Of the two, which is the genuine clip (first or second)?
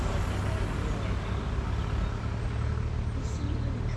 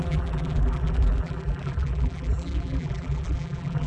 first